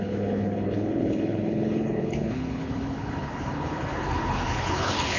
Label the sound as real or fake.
fake